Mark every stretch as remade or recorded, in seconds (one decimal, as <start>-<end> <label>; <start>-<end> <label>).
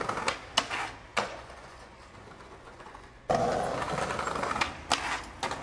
0.0-1.1 recorded; 1.1-3.5 remade; 3.5-5.6 recorded